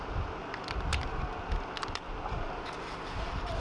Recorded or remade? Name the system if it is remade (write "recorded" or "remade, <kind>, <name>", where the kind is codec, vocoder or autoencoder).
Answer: recorded